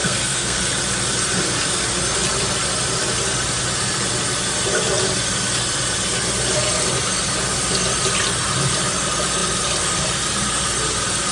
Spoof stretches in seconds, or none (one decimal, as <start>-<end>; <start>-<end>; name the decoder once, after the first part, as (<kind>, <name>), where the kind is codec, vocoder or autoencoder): 0.0-0.6 (codec, SNAC)